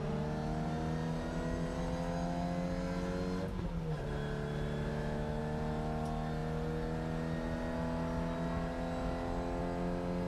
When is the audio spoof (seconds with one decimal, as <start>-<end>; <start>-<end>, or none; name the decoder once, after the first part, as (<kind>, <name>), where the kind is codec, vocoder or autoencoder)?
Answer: 4.9-5.4 (autoencoder, DAC-VAE)